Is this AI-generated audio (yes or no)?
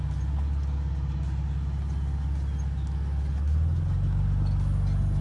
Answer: no